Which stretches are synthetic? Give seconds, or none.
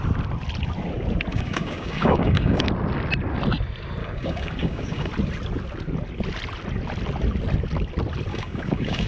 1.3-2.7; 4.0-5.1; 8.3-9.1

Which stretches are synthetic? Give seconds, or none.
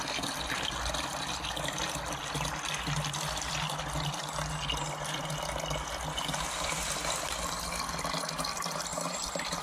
8.9-9.6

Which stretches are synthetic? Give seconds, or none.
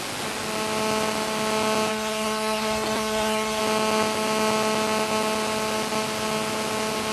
1.9-3.6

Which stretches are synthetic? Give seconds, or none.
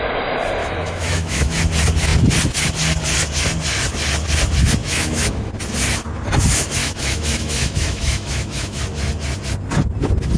0.6-1.6; 4.8-5.5; 6.8-8.8